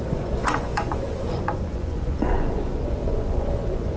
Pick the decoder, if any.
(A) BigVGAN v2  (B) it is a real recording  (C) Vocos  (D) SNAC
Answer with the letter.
C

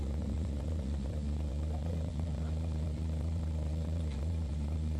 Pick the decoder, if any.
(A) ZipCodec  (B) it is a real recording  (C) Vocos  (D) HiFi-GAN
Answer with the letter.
C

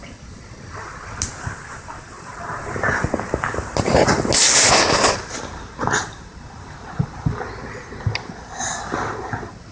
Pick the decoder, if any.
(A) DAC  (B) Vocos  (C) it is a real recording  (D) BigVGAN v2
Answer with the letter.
C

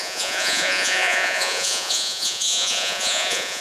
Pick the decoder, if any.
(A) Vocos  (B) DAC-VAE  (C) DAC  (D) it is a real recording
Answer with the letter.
A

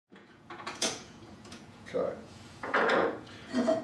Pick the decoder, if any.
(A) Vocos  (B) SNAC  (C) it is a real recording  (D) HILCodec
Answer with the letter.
A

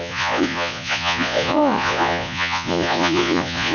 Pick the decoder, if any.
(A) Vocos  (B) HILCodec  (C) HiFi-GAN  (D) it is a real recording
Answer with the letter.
A